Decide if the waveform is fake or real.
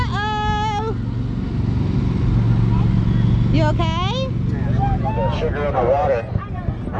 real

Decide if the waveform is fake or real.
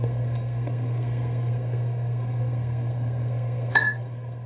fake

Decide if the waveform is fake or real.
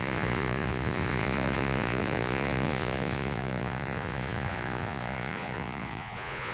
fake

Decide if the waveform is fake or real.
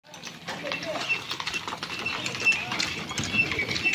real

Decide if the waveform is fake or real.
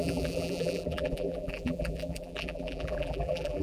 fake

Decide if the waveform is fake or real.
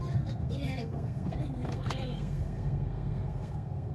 fake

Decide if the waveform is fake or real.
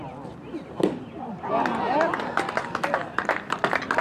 real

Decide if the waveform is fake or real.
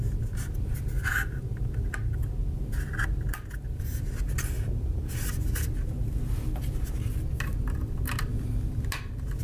real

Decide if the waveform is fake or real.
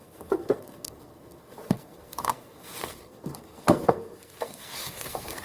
fake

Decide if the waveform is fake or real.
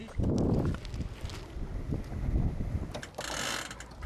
real